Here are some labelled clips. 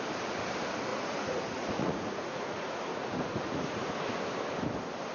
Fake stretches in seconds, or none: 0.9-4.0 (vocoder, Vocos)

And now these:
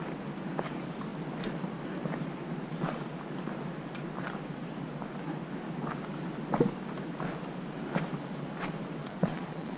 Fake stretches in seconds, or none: 9.0-9.8 (vocoder, Vocos)

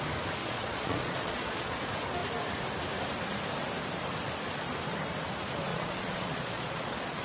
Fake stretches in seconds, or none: 0.4-1.8 (vocoder, Vocos); 5.7-7.2

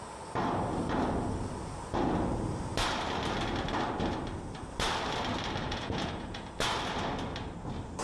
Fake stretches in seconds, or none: 5.6-6.4 (vocoder, Vocos)

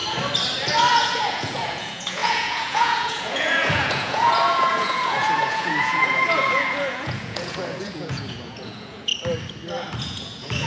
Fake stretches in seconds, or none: 0.9-9.1 (vocoder, Vocos); 10.0-10.7

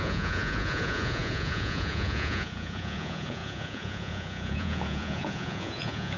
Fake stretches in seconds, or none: 0.0-6.2 (vocoder, Vocos)

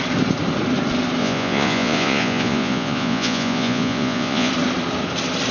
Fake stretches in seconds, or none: 1.2-4.5 (vocoder, Vocos)